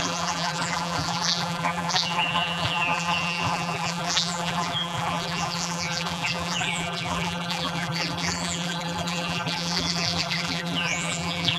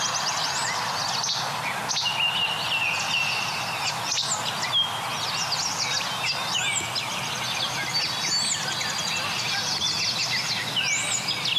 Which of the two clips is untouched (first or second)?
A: second